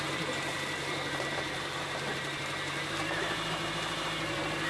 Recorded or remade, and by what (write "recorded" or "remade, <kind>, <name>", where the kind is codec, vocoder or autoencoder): remade, vocoder, BigVGAN v2